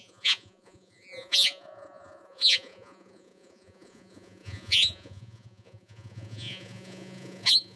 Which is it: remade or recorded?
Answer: remade